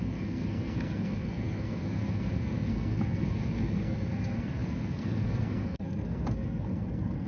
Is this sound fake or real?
fake